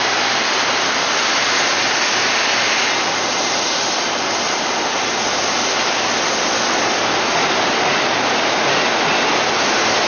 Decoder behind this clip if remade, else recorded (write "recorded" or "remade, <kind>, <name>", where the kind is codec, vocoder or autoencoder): recorded